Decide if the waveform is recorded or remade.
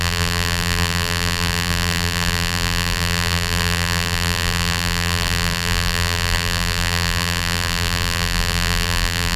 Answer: remade